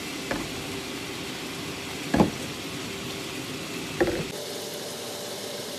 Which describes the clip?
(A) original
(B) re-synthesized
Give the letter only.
A